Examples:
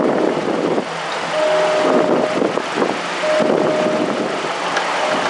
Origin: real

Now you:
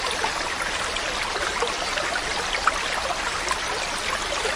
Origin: real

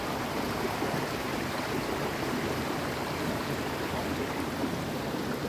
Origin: fake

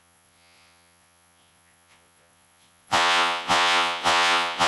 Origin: fake